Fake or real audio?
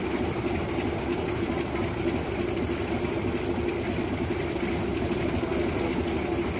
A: real